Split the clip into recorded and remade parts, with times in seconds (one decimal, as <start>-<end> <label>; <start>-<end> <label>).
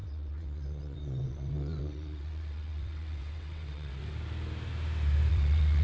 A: 0.0-4.0 remade; 4.0-5.3 recorded; 5.3-5.8 remade